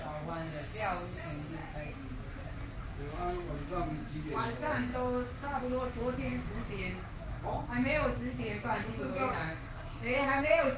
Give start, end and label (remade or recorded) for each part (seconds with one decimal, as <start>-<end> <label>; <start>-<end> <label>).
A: 0.0-1.6 remade; 1.6-2.4 recorded; 2.4-10.8 remade